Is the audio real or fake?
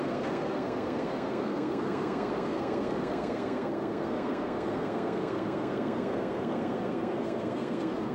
fake